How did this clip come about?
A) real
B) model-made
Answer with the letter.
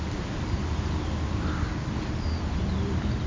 A